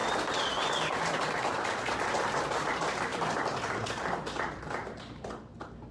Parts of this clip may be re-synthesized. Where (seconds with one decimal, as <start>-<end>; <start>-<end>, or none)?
none

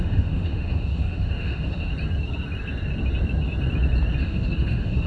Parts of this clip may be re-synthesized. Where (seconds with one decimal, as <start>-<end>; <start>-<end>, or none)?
0.0-1.9; 4.2-5.1

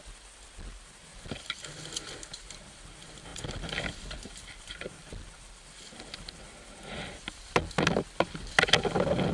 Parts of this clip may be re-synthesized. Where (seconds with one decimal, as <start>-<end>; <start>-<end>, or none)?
1.1-1.6; 3.3-5.5

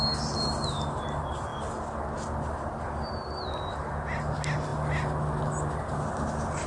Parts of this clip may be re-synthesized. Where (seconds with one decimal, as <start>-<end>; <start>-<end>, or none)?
none

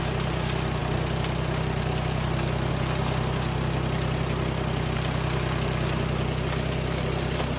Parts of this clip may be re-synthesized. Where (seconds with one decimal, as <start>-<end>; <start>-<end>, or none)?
none

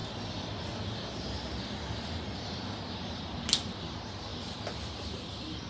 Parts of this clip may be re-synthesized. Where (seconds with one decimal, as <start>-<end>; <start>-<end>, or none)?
none

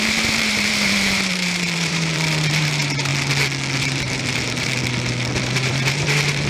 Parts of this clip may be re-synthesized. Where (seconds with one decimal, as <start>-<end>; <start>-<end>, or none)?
0.0-3.1; 3.8-4.8; 5.4-6.5

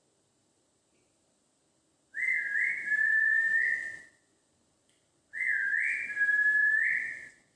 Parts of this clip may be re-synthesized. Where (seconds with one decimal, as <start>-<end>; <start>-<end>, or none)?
3.0-6.0; 6.6-7.6